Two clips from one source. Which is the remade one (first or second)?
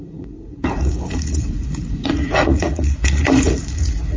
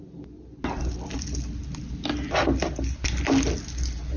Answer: first